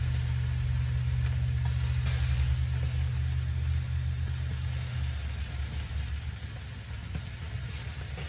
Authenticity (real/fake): real